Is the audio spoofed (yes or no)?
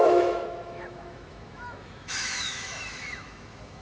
yes